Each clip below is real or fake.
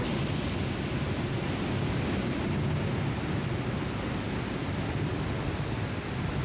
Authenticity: real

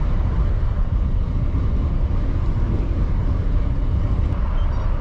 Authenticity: real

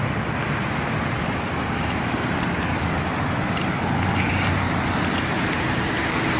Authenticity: real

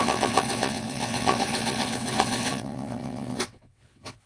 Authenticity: fake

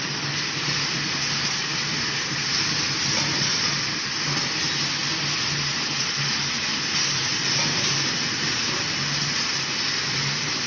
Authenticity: real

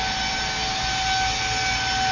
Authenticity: real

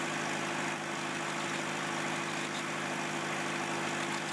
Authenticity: real